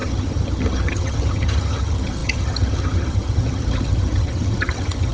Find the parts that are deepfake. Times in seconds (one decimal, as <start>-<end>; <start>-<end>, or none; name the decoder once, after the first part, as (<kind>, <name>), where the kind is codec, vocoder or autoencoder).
0.0-5.1 (vocoder, HiFi-GAN)